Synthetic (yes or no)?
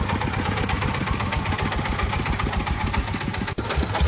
no